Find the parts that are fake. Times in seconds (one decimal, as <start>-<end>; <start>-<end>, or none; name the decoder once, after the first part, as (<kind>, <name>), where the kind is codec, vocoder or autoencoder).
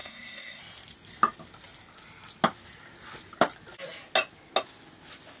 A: 0.0-0.6 (codec, SNAC)